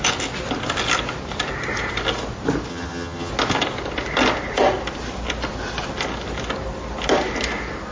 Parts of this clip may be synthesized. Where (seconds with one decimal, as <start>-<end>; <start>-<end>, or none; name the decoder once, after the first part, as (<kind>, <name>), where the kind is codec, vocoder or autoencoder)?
2.7-3.3 (vocoder, HiFi-GAN)